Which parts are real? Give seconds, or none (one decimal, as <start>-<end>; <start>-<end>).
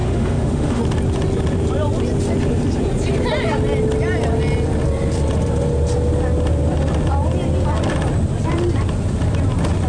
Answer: 0.8-9.9